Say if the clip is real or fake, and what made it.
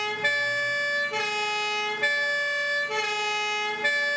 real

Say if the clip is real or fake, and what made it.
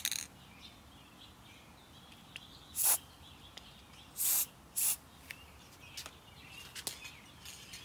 real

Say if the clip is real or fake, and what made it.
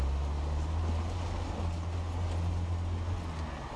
real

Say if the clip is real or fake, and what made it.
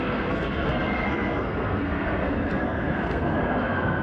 fake, codec, SNAC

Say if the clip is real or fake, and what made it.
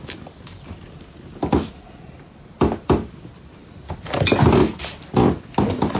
real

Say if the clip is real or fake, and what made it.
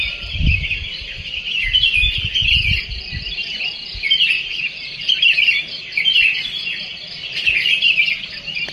real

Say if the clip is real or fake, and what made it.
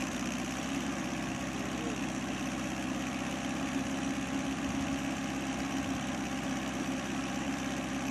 real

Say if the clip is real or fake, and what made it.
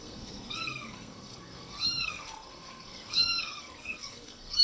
fake, codec, SNAC